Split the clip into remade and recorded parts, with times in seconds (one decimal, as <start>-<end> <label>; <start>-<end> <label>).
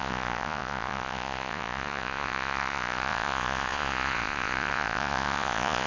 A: 0.0-5.9 remade